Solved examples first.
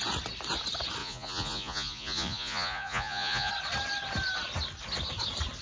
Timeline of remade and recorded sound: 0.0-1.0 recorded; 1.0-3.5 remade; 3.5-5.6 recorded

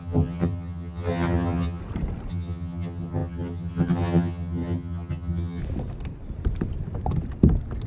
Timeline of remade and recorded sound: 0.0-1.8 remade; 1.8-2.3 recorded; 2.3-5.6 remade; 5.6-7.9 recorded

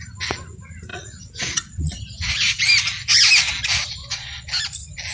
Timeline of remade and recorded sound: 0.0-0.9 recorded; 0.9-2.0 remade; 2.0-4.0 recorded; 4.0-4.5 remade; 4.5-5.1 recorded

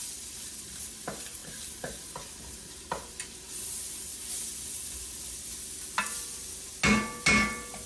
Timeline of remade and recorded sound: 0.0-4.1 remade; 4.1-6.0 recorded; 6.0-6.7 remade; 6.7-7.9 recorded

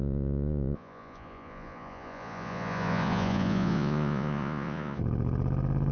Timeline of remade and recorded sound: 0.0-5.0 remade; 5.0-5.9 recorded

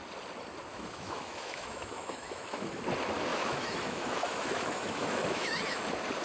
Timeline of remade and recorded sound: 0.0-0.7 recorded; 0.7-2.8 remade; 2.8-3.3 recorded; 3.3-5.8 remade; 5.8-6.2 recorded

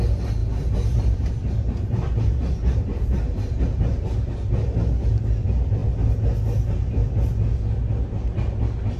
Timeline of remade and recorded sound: 0.0-0.4 recorded; 0.4-3.6 remade; 3.6-9.0 recorded